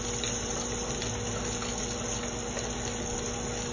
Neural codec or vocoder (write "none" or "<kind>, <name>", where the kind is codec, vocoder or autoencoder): none